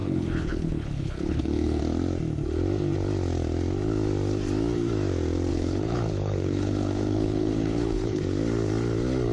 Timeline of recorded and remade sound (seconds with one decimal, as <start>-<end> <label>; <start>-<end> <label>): 0.0-1.8 remade; 1.8-5.5 recorded; 5.5-8.2 remade; 8.2-9.3 recorded